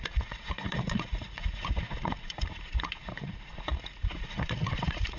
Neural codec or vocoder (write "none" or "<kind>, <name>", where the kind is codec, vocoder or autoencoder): vocoder, Vocos